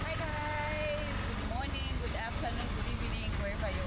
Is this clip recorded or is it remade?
recorded